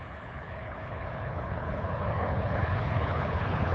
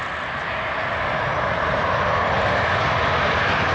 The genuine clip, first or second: second